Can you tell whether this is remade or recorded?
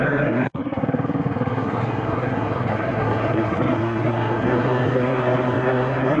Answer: remade